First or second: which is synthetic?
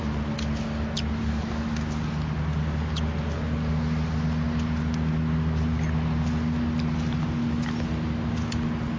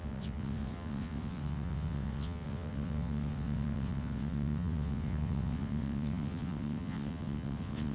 second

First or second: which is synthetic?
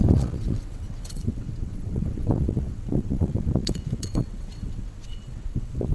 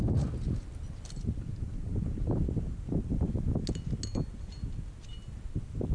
first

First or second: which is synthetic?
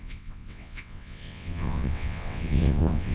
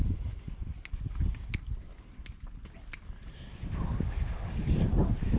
first